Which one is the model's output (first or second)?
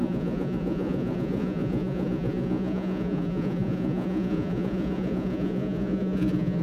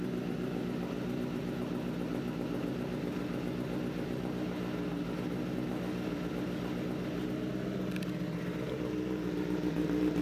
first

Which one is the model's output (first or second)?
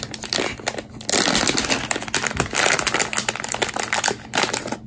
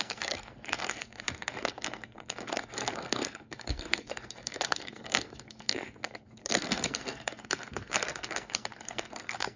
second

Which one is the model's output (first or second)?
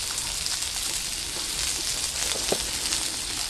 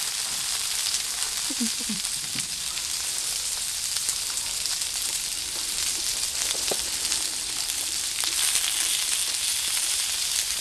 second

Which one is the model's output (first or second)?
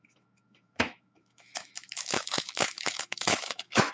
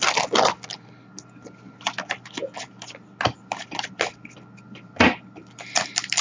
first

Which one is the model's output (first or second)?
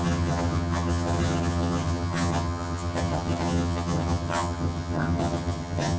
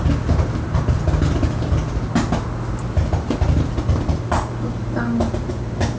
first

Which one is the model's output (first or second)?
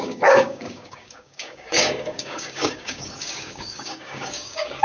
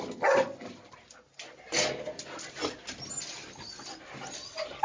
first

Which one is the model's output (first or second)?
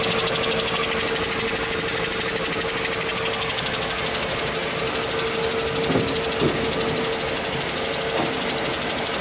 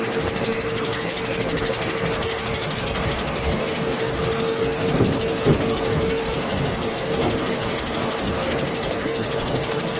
second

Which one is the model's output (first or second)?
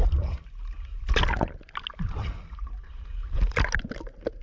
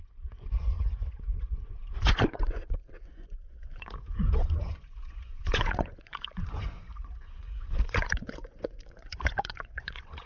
second